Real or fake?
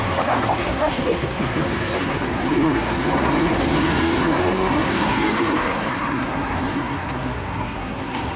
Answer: fake